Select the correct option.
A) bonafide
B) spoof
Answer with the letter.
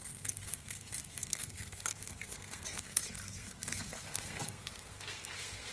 B